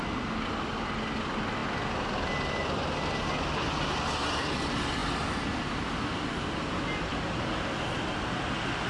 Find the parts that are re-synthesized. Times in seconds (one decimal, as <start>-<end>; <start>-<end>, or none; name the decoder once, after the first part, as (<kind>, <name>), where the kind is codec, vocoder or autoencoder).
none